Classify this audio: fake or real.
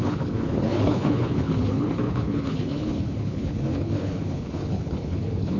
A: fake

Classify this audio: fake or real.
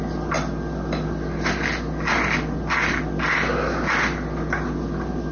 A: real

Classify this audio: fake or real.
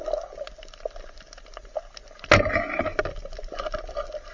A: real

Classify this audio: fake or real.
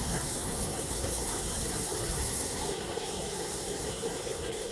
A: fake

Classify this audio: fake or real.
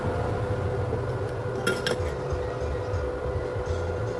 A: real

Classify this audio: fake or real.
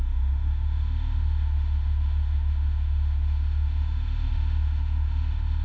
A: fake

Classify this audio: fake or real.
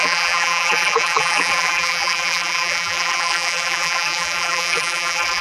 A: fake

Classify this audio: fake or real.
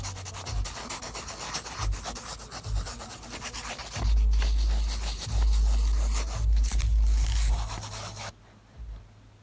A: real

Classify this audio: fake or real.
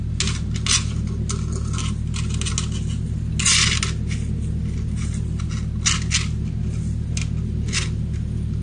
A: real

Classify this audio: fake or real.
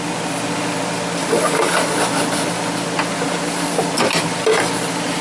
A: real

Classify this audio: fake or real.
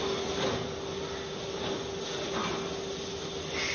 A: real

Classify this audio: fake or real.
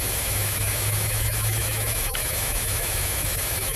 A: fake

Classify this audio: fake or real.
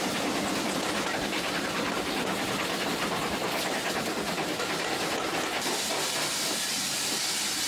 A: real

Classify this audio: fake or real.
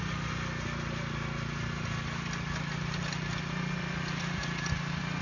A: real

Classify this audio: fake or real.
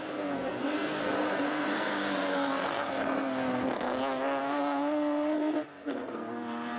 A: fake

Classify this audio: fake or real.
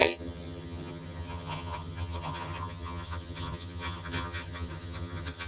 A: fake